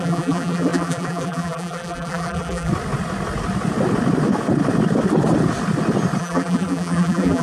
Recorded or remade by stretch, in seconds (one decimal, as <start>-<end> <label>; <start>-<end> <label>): 0.0-2.7 remade; 2.7-6.2 recorded; 6.2-7.4 remade